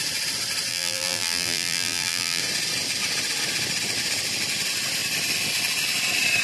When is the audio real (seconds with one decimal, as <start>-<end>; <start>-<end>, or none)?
0.0-0.7; 2.4-6.4